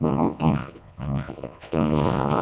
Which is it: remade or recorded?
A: remade